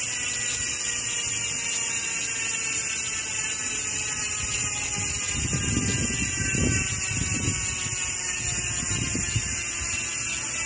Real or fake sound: real